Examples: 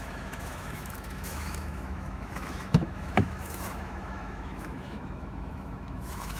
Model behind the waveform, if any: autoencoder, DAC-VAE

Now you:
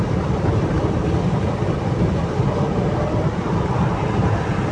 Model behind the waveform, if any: none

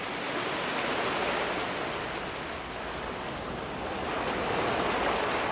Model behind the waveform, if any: none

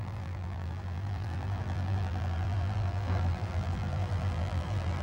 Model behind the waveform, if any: vocoder, BigVGAN v2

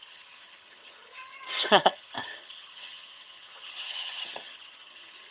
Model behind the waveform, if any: vocoder, HiFi-GAN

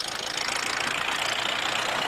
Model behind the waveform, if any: none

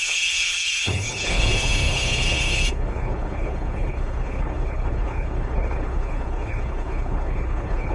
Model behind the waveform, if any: codec, HILCodec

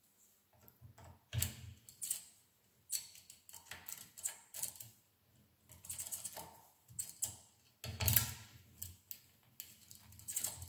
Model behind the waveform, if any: none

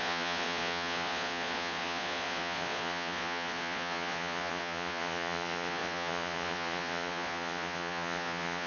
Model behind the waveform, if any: vocoder, Vocos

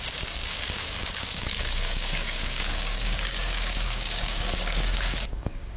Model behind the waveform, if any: codec, DAC